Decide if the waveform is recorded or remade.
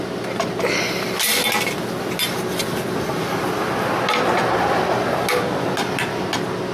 recorded